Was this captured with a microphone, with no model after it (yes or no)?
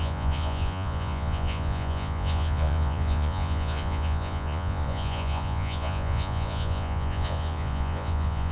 no